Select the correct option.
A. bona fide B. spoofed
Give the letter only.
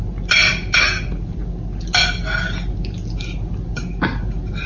A